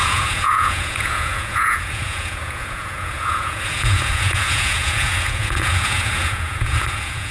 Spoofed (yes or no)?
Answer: yes